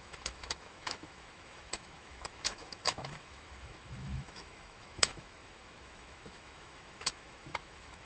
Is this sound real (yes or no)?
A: no